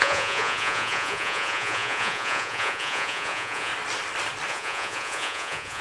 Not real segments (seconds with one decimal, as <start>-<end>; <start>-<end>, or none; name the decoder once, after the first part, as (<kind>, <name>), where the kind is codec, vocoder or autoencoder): 0.0-3.7 (vocoder, Vocos); 4.5-5.8

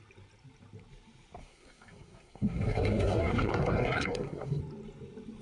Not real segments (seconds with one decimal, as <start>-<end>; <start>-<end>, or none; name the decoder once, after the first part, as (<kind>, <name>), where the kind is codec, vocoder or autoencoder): 1.4-4.6 (codec, SNAC)

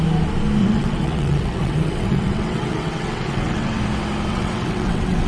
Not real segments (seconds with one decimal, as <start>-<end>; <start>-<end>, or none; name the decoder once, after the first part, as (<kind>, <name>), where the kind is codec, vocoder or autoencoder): 0.6-3.8 (vocoder, WaveNeXt); 4.3-5.3

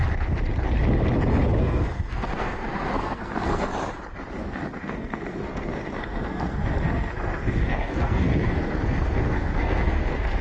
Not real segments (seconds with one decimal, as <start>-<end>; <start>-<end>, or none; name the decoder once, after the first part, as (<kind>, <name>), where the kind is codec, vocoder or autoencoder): 1.6-3.7 (codec, SNAC); 4.4-10.4

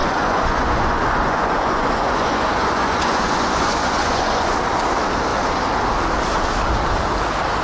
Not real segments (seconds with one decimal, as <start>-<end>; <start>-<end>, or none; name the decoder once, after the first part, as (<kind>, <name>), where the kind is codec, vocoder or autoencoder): 0.0-4.6 (vocoder, Vocos)

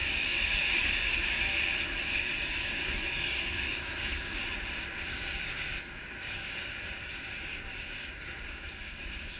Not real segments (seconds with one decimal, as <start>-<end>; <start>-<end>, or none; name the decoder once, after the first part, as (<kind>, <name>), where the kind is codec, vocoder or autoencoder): 0.0-4.4 (codec, DAC); 5.1-9.4

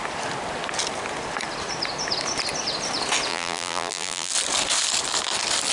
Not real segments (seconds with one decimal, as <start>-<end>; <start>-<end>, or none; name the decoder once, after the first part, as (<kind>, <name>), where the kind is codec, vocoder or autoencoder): 3.3-4.3 (vocoder, BigVGAN v2)

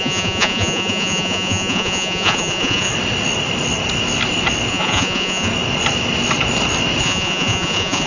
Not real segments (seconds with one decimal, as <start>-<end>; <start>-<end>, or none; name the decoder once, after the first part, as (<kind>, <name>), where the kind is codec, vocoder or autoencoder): 0.0-2.9 (vocoder, Vocos); 4.7-5.5; 7.0-8.1